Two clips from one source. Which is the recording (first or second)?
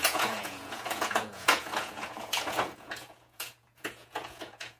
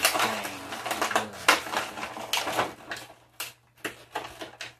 second